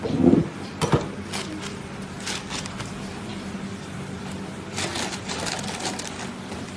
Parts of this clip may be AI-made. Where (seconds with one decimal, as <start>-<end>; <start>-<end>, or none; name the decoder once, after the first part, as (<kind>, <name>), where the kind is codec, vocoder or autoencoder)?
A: none